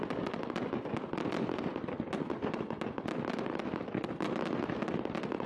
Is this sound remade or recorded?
recorded